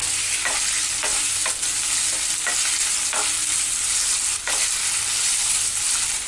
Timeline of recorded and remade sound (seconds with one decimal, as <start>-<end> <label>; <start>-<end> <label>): 0.0-6.3 recorded